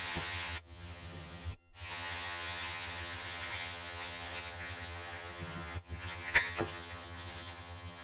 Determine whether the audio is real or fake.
fake